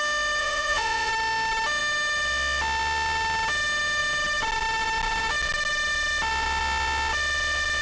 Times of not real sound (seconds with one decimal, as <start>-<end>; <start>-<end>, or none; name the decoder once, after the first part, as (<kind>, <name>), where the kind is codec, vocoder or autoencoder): 0.4-1.1 (vocoder, Vocos)